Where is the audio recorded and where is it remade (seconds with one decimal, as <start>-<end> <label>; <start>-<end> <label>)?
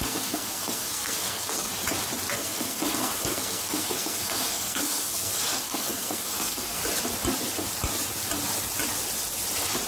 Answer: 0.0-1.7 remade; 1.7-2.3 recorded; 2.3-6.8 remade; 6.8-9.9 recorded